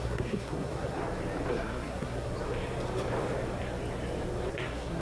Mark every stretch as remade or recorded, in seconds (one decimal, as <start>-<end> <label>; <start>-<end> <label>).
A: 0.0-1.0 remade; 1.0-1.5 recorded; 1.5-2.3 remade; 2.3-4.5 recorded; 4.5-5.0 remade

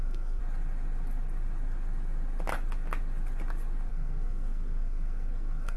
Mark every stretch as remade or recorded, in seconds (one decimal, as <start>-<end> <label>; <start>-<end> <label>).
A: 0.0-0.4 remade; 0.4-3.9 recorded; 3.9-5.8 remade

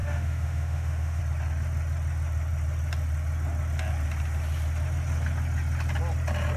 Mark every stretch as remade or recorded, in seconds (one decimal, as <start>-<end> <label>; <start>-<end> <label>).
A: 0.0-1.2 remade; 1.2-6.6 recorded

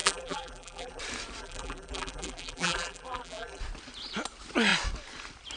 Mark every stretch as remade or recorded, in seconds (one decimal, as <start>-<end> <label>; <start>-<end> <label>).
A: 0.0-1.0 remade; 1.0-1.4 recorded; 1.4-3.6 remade; 3.6-5.6 recorded

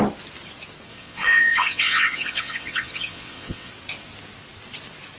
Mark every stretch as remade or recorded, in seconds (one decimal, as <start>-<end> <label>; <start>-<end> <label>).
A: 0.0-0.9 recorded; 0.9-3.7 remade; 3.7-5.2 recorded

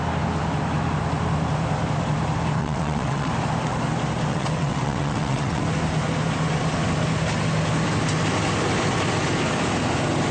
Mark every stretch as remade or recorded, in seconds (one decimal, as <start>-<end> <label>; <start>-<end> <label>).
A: 0.0-2.6 recorded; 2.6-3.3 remade; 3.3-4.3 recorded; 4.3-5.6 remade; 5.6-10.3 recorded

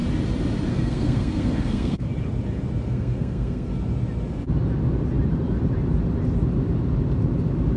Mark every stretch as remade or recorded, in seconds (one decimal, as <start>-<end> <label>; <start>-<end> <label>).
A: 0.0-0.7 recorded; 0.7-2.1 remade; 2.1-2.9 recorded; 2.9-3.7 remade; 3.7-7.8 recorded

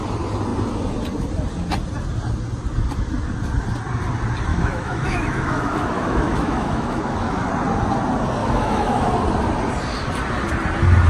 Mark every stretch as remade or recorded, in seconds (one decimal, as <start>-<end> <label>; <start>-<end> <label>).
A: 0.0-4.5 recorded; 4.5-7.5 remade; 7.5-8.4 recorded; 8.4-9.1 remade; 9.1-11.1 recorded